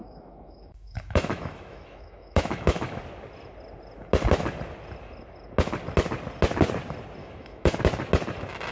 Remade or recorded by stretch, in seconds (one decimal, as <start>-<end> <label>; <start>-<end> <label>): 0.0-3.0 remade; 3.0-7.2 recorded; 7.2-7.8 remade; 7.8-8.7 recorded